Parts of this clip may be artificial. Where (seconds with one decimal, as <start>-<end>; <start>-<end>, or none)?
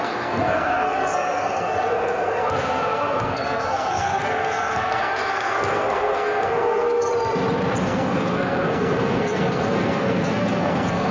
0.0-7.1; 7.8-11.1